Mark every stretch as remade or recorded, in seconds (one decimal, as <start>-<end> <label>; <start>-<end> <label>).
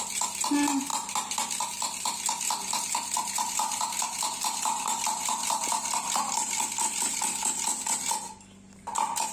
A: 0.0-9.3 recorded